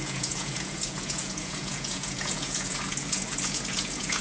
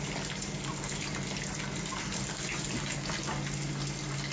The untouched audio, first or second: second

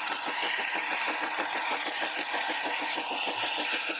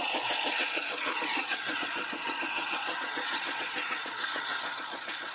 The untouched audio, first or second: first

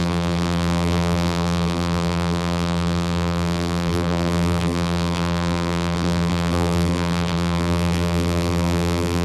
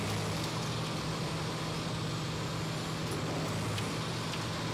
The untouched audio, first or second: second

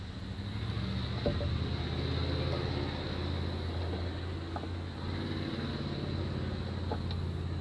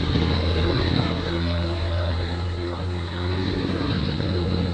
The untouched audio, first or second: first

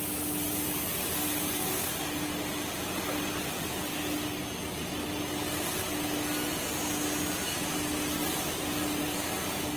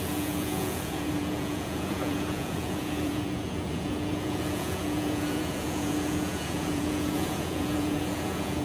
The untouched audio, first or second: first